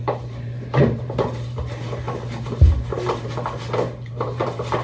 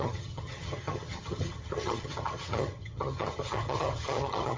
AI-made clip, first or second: second